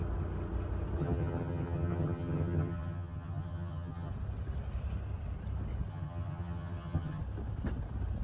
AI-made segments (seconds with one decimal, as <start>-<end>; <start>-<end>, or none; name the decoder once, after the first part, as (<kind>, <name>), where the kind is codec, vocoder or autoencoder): 1.0-4.1 (vocoder, HiFi-GAN); 5.9-7.2